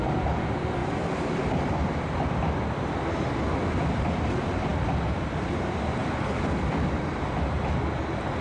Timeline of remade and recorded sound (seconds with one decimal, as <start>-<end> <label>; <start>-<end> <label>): 0.0-0.8 recorded; 0.8-2.0 remade; 2.0-6.0 recorded; 6.0-7.5 remade; 7.5-8.4 recorded